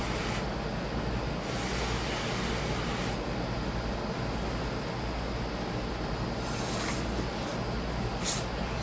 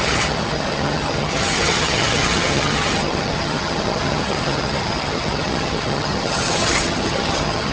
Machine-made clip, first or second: second